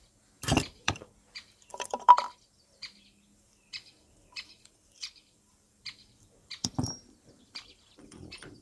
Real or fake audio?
fake